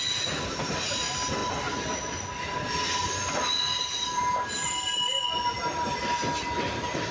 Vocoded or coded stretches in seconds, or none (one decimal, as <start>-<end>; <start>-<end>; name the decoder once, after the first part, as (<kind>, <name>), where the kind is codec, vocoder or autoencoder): none

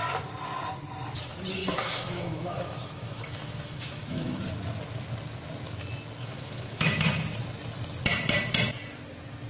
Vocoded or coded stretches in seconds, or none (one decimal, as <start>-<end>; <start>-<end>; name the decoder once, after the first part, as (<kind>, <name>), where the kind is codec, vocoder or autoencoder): 1.6-4.4 (autoencoder, DAC-VAE); 6.2-7.0

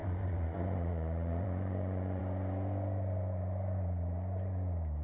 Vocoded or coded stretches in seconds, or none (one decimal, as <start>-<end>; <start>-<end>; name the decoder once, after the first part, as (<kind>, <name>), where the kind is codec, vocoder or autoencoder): 0.0-2.2 (vocoder, Vocos)

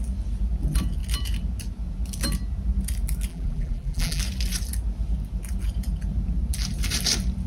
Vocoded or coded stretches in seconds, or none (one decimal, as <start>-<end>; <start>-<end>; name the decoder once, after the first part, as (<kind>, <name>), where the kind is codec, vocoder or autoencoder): 3.3-4.2 (vocoder, BigVGAN v2)

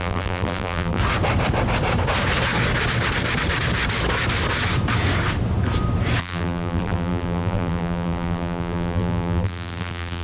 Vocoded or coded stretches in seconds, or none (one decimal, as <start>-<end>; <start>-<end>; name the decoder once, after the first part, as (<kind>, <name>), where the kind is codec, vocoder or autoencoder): 0.0-1.0 (vocoder, BigVGAN v2); 6.2-10.2

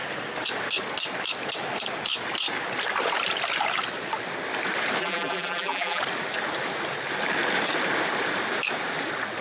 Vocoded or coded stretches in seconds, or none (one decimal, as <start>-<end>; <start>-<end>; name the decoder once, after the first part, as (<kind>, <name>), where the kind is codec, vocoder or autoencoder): 5.0-6.0 (vocoder, BigVGAN v2)

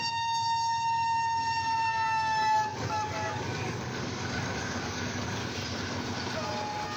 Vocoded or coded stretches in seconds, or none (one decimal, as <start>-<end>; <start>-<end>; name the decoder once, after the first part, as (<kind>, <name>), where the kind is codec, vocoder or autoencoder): 0.0-5.4 (codec, DAC)